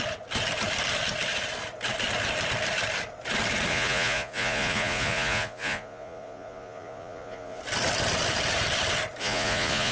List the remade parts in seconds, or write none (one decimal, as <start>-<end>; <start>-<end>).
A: 3.7-7.6; 9.2-9.9